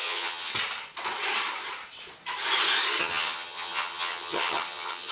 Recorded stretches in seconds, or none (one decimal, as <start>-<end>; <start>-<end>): 0.5-3.0